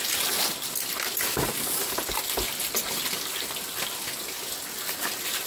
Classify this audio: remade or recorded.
recorded